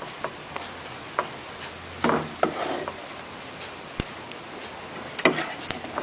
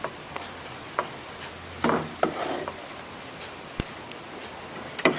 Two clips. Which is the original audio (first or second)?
first